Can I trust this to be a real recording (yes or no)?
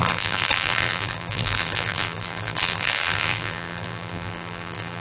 no